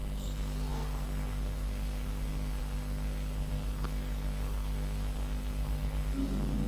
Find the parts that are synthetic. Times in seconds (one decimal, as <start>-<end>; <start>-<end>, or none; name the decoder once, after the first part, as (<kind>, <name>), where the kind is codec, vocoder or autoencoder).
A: 0.0-6.7 (codec, SNAC)